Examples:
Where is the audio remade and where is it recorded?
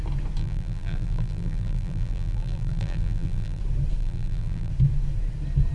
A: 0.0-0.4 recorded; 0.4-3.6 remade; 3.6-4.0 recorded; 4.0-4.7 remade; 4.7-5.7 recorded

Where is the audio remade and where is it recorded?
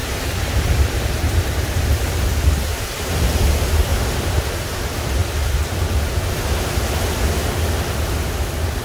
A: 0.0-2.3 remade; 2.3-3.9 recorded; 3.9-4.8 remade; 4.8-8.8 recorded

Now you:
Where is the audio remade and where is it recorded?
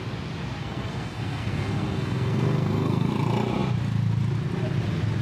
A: 0.0-0.6 recorded; 0.6-3.1 remade; 3.1-5.2 recorded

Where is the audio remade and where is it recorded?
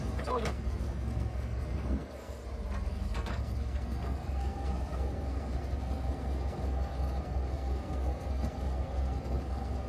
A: 0.0-2.4 remade; 2.4-2.9 recorded; 2.9-9.9 remade